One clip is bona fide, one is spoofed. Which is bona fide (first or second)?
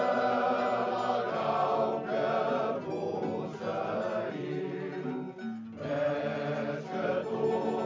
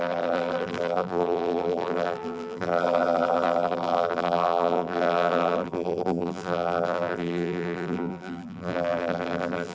first